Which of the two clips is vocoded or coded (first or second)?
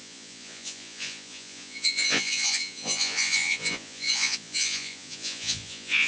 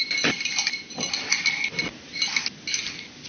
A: first